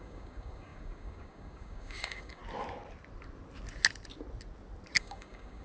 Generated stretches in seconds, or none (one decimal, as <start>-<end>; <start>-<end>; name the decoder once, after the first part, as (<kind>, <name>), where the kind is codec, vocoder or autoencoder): 0.0-2.4 (codec, DAC); 5.0-5.6